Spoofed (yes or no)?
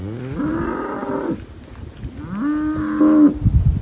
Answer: no